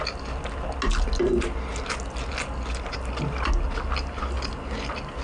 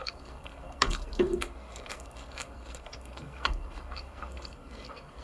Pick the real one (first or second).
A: first